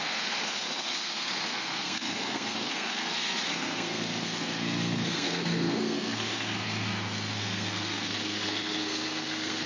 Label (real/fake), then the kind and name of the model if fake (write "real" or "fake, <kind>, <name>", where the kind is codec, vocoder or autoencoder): fake, codec, SNAC